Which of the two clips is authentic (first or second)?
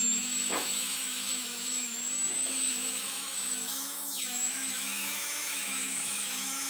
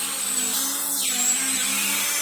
second